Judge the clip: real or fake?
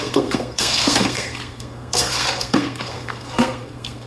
fake